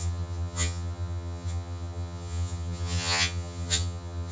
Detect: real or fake fake